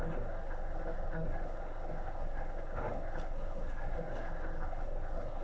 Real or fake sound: fake